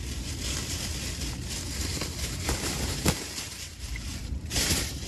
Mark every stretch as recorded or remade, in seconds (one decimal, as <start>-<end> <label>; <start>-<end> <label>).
0.0-1.9 recorded; 1.9-5.1 remade